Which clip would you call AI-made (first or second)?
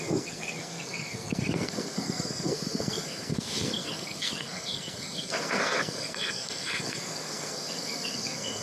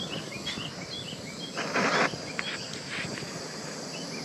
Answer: first